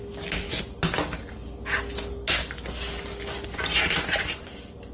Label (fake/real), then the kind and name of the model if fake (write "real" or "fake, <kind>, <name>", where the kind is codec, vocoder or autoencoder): real